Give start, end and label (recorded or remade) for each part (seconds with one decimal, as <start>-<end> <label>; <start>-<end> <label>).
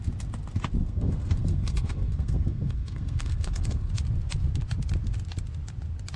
0.0-0.8 recorded; 0.8-3.9 remade; 3.9-6.2 recorded